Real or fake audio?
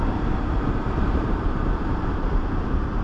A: fake